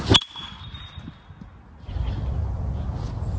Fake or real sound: real